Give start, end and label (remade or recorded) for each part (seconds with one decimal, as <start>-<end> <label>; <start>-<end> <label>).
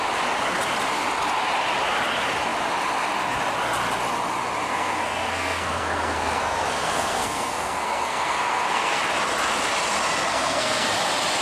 0.0-4.7 recorded; 4.7-9.0 remade; 9.0-10.3 recorded; 10.3-10.9 remade; 10.9-11.4 recorded